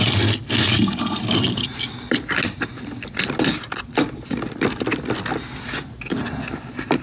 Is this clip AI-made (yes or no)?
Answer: no